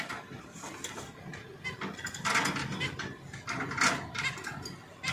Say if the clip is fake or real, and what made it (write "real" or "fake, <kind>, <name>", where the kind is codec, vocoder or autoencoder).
real